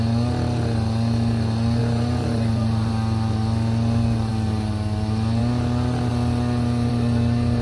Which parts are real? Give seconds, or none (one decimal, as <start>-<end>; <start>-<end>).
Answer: 0.0-1.8; 2.9-7.6